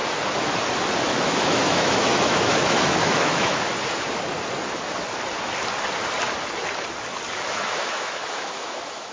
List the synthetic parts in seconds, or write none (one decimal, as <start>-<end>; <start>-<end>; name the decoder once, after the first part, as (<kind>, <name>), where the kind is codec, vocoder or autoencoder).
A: 1.0-3.7 (autoencoder, DAC-VAE); 7.3-9.1